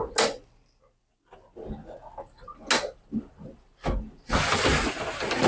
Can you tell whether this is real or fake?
real